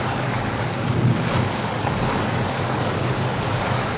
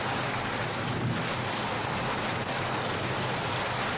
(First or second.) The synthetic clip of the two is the first